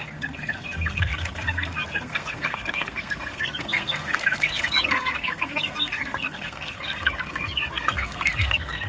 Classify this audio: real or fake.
fake